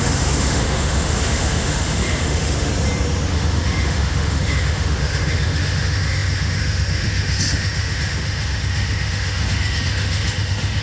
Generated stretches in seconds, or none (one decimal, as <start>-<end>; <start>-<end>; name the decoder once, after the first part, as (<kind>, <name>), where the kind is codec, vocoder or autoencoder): 0.0-2.7 (autoencoder, DAC-VAE); 3.3-10.8